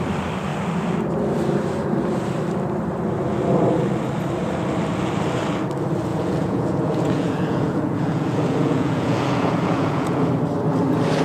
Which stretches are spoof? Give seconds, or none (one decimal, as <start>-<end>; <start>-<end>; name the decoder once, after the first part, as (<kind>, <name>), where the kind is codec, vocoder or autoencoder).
6.1-10.3 (vocoder, Vocos)